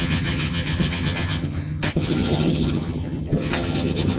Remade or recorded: remade